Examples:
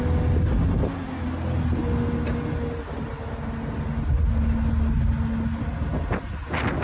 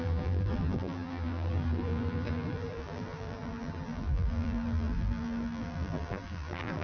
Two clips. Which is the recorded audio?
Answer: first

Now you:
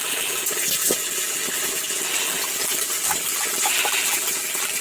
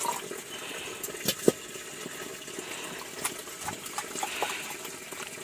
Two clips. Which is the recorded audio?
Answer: second